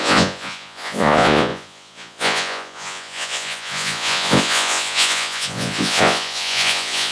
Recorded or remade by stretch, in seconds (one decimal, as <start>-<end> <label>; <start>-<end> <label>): 0.0-7.1 remade